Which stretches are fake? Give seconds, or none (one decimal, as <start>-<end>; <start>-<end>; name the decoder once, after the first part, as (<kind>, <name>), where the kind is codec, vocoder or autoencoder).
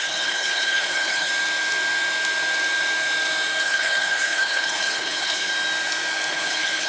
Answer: 0.0-1.3 (codec, HILCodec); 3.6-5.5; 6.3-6.9